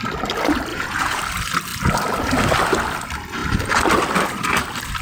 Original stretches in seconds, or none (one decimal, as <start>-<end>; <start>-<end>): 0.0-0.7; 1.2-5.0